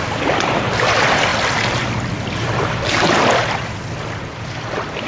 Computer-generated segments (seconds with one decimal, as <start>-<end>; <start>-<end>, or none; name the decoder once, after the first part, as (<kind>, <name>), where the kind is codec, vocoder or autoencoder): 0.0-1.3 (vocoder, BigVGAN v2); 4.4-5.1